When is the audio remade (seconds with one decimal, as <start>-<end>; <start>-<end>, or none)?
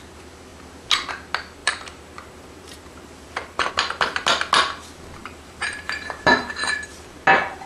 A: 1.6-3.7; 5.2-6.9